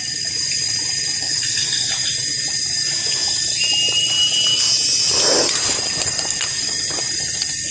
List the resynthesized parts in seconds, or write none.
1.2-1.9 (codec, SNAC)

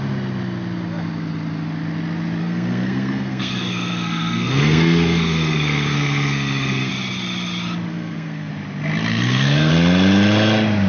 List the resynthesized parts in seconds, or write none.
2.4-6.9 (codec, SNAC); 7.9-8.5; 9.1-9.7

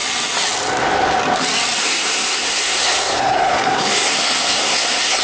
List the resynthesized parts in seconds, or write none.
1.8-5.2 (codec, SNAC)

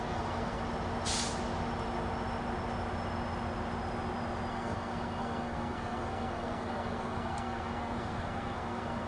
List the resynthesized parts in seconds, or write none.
0.0-0.6 (codec, SNAC); 4.5-9.1

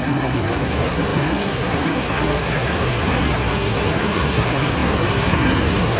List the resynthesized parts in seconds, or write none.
0.0-6.0 (codec, SNAC)

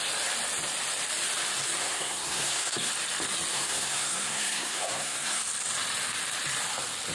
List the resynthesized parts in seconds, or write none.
1.8-2.9 (codec, SNAC); 3.5-5.4

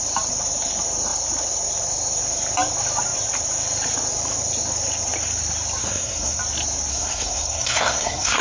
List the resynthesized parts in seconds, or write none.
5.8-6.4 (codec, SNAC); 6.9-8.4